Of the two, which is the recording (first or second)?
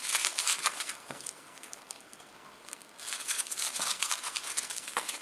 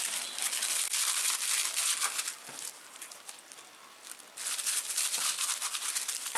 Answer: second